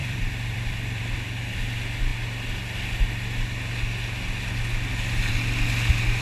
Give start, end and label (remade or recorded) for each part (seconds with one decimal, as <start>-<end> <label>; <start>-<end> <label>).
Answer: 0.0-1.5 remade; 1.5-6.2 recorded

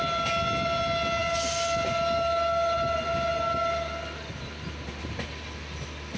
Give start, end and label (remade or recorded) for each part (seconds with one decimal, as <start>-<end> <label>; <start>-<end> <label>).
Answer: 0.0-6.2 recorded

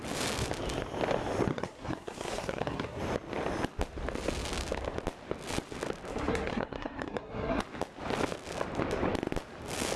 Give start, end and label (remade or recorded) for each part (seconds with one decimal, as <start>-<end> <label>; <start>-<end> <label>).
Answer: 0.0-1.5 recorded; 1.5-3.0 remade; 3.0-6.1 recorded; 6.1-7.6 remade; 7.6-10.0 recorded

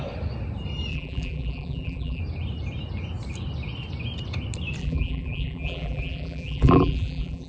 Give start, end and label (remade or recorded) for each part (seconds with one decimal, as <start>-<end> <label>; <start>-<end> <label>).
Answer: 0.0-0.9 recorded; 0.9-2.2 remade; 2.2-4.8 recorded; 4.8-7.5 remade

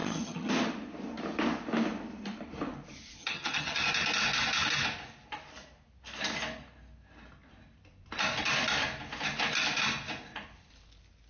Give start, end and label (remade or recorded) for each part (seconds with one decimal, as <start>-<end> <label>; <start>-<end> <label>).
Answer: 0.0-0.5 remade; 0.5-3.2 recorded; 3.2-3.8 remade; 3.8-11.3 recorded

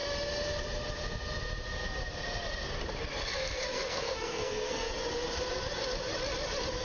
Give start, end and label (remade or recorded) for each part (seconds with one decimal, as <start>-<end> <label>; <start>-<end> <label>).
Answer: 0.0-3.2 recorded; 3.2-4.9 remade; 4.9-6.8 recorded

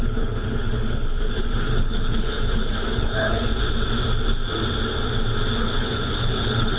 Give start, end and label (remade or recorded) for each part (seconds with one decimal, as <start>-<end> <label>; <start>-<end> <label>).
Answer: 0.0-3.5 remade; 3.5-5.6 recorded; 5.6-6.8 remade

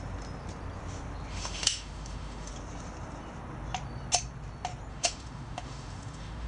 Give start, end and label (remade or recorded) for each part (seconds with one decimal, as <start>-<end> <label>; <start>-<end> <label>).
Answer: 0.0-1.3 recorded; 1.3-2.5 remade; 2.5-4.9 recorded; 4.9-6.5 remade